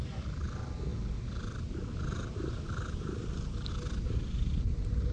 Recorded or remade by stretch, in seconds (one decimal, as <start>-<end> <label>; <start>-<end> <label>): 0.0-5.1 recorded